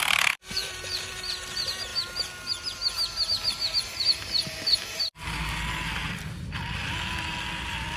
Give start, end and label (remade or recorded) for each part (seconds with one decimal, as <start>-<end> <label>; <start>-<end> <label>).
0.0-0.6 recorded; 0.6-1.3 remade; 1.3-8.0 recorded